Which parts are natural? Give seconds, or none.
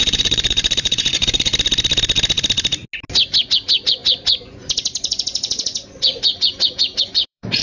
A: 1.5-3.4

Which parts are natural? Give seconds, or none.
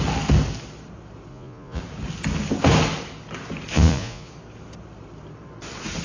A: 0.0-1.3; 1.8-3.7; 4.3-6.0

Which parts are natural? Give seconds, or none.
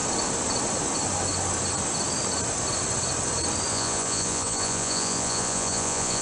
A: 0.0-3.7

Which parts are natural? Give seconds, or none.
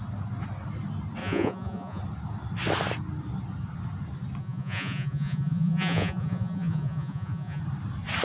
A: 0.0-1.2; 2.0-4.4; 7.6-8.2